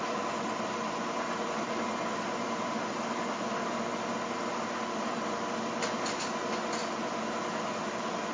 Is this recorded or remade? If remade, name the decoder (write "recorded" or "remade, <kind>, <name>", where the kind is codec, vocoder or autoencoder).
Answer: recorded